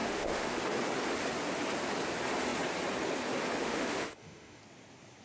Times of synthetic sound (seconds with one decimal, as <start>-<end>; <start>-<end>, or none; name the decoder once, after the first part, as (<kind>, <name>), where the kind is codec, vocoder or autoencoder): 0.0-0.6 (autoencoder, DAC-VAE); 3.6-4.6